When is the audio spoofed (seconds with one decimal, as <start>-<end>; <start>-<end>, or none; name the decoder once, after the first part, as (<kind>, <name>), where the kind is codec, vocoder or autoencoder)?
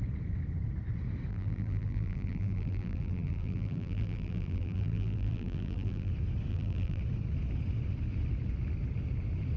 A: 1.3-6.1 (vocoder, BigVGAN v2); 6.5-7.0